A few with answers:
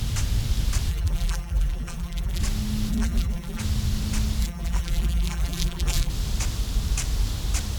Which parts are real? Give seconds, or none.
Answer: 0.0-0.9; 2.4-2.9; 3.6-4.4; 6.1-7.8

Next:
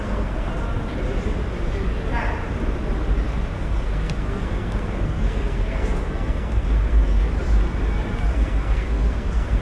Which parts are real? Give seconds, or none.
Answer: 0.5-3.3; 7.2-8.3

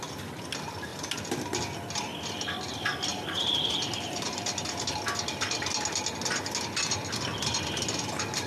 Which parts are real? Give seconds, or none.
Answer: 0.0-3.1; 4.9-8.5

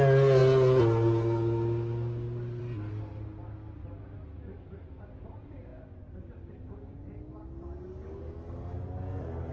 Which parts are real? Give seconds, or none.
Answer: 0.0-9.5